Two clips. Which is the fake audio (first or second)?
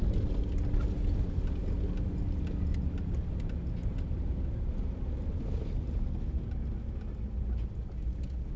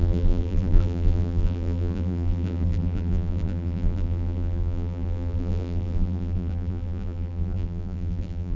second